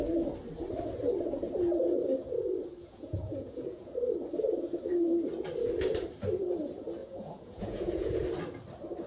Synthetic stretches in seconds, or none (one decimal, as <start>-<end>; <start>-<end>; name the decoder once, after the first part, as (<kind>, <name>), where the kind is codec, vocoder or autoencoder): 2.8-3.9 (vocoder, Vocos); 7.0-8.2